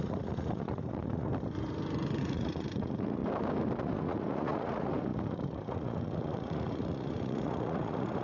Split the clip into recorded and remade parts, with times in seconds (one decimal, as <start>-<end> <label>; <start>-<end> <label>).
0.0-1.3 remade; 1.3-2.2 recorded; 2.2-3.2 remade; 3.2-3.8 recorded; 3.8-8.2 remade